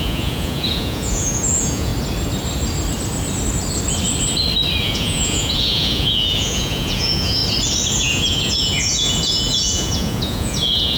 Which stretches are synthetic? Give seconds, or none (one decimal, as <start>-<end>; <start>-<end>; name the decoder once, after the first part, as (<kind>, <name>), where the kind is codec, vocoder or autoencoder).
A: 0.0-1.9 (vocoder, Vocos); 4.8-7.4; 8.0-11.0